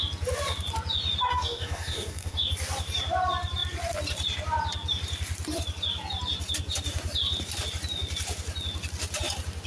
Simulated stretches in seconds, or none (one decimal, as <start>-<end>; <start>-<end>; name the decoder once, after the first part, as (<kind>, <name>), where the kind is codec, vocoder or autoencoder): 1.3-2.4 (codec, DAC)